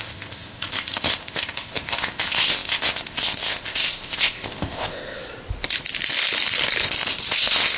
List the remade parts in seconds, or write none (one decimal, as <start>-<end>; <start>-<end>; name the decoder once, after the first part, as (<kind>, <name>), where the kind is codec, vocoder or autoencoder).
0.0-5.2 (codec, ZipCodec); 7.3-7.8